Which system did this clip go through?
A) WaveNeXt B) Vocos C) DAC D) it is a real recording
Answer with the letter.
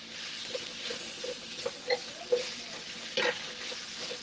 D